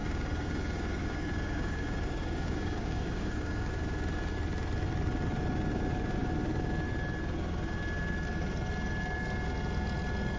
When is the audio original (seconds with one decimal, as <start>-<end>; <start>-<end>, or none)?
3.7-10.4